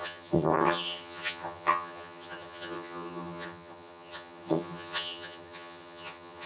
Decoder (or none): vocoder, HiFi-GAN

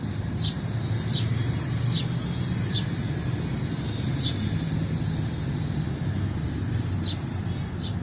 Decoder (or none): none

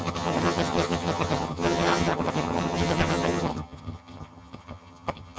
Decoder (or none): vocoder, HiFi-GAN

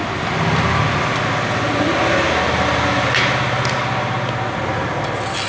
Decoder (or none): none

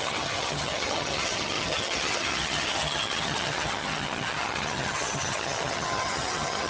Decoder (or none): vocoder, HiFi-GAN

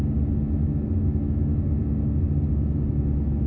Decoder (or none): none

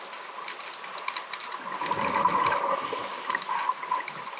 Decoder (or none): none